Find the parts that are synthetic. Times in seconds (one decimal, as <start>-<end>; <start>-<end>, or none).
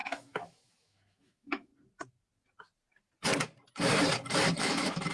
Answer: 0.0-1.7; 4.6-5.1